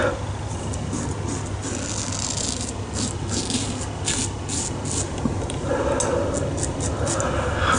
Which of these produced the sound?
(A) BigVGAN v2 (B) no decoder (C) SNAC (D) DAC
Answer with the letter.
B